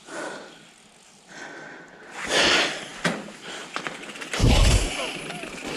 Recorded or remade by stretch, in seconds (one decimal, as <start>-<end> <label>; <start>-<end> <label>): 0.0-5.8 recorded